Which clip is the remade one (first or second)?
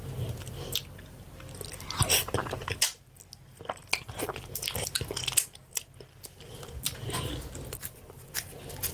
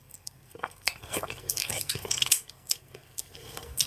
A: second